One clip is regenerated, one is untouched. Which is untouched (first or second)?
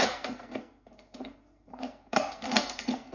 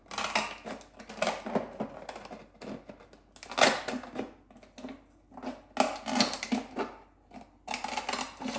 second